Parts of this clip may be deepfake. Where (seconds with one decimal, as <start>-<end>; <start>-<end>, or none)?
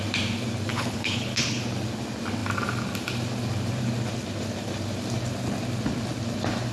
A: 0.7-1.6